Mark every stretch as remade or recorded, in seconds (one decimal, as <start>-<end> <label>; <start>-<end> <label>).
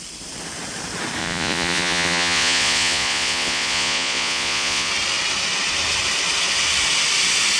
0.0-1.2 recorded; 1.2-4.9 remade; 4.9-7.6 recorded